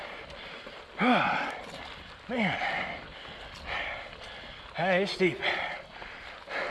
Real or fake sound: real